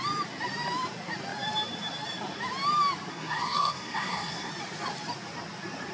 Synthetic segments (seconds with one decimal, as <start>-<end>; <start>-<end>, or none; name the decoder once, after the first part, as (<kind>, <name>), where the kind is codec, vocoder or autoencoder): 3.1-4.5 (codec, SNAC)